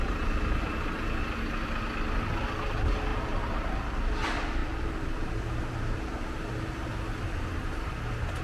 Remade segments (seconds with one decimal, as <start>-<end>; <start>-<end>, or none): 3.1-3.8; 4.6-6.9

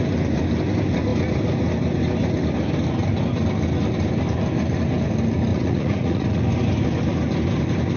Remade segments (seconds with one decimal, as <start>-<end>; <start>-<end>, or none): 5.5-6.4

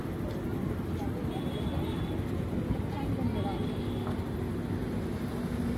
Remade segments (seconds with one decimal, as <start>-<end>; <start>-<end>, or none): 0.5-1.5

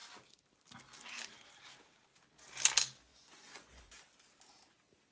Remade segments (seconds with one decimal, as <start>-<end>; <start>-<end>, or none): 3.1-3.9